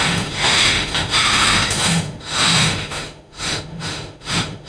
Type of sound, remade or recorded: remade